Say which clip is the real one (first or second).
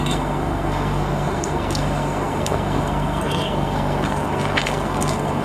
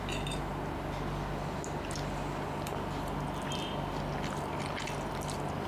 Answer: second